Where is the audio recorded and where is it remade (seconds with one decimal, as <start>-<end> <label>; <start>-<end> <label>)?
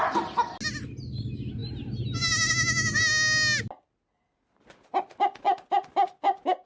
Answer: 0.0-6.7 recorded